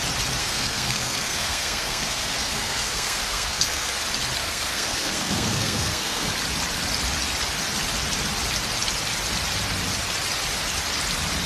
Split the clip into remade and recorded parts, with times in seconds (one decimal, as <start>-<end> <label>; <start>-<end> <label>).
0.0-0.4 recorded; 0.4-3.9 remade; 3.9-4.4 recorded; 4.4-6.3 remade; 6.3-11.5 recorded